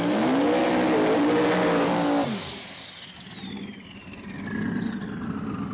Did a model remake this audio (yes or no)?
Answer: no